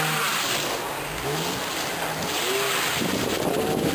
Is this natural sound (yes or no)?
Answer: yes